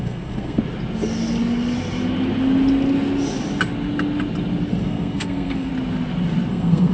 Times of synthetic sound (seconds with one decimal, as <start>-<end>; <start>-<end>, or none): 0.0-0.6; 4.7-5.7; 6.5-6.9